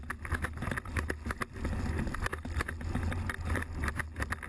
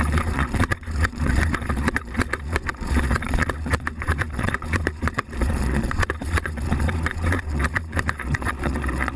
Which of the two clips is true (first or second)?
first